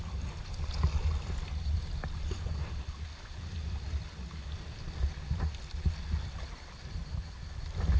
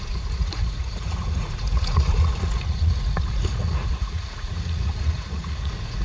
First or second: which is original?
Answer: first